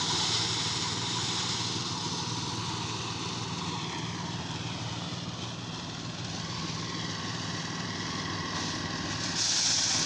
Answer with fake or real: real